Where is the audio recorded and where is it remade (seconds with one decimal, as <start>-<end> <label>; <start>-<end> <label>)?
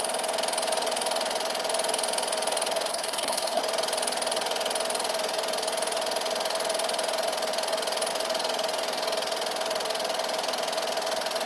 0.0-2.9 recorded; 2.9-3.6 remade; 3.6-11.5 recorded